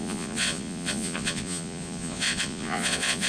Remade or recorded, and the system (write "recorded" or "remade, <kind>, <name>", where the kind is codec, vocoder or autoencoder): remade, vocoder, Vocos